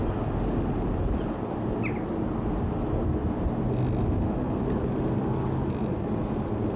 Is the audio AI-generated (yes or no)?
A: no